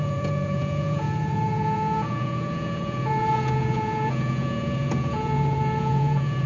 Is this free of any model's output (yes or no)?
no